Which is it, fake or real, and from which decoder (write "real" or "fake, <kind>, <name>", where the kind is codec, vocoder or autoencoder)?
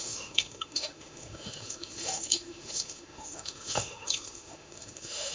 fake, autoencoder, DAC-VAE